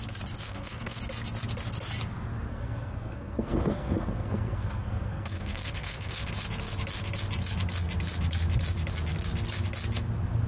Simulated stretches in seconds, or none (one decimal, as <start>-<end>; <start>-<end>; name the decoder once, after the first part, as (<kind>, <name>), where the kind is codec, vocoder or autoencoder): 0.4-1.0 (codec, SNAC); 2.5-6.3